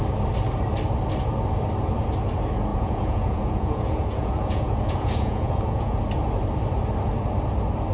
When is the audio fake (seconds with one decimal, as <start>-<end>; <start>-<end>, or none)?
2.7-6.0